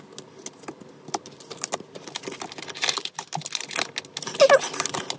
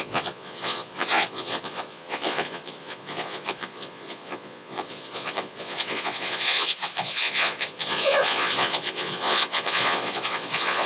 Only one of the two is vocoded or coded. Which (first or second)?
second